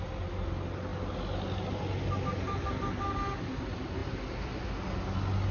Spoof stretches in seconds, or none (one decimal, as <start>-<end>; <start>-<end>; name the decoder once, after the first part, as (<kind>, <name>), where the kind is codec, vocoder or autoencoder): none